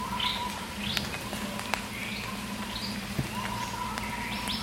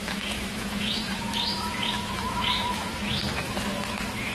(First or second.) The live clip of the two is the first